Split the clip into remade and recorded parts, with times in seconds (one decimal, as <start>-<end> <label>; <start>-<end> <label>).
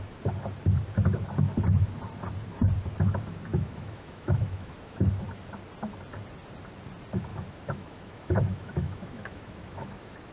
0.0-3.5 recorded; 3.5-5.1 remade; 5.1-7.3 recorded; 7.3-10.3 remade